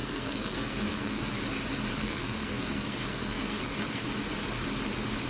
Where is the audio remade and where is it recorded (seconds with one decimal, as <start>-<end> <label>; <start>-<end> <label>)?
0.0-1.2 remade; 1.2-1.9 recorded; 1.9-4.0 remade; 4.0-5.3 recorded